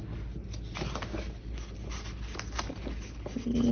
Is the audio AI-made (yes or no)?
no